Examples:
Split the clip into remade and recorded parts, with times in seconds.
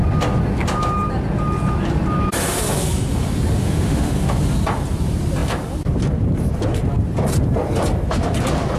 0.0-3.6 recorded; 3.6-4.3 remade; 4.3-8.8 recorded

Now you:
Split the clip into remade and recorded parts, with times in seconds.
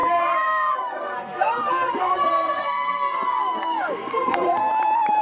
0.0-4.7 remade; 4.7-5.2 recorded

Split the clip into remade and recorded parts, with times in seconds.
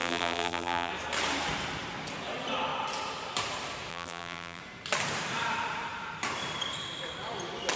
0.0-0.9 remade; 0.9-3.9 recorded; 3.9-4.6 remade; 4.6-7.8 recorded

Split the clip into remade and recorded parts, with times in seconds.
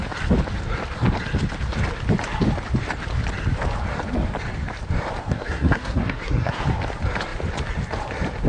0.0-5.2 recorded; 5.2-6.6 remade; 6.6-8.5 recorded